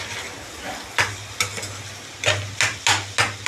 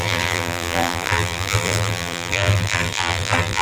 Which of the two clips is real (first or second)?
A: first